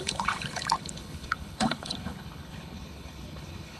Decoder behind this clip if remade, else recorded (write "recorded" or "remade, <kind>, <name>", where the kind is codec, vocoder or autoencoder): remade, codec, HILCodec